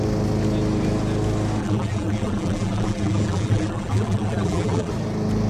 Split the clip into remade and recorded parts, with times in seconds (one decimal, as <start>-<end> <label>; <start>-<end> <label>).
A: 0.0-1.6 recorded; 1.6-4.9 remade; 4.9-5.5 recorded